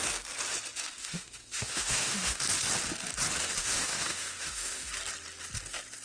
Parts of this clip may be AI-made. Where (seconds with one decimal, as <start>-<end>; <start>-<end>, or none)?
1.0-2.4; 3.6-4.9